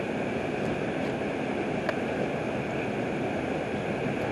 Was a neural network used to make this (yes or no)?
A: no